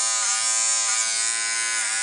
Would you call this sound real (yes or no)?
yes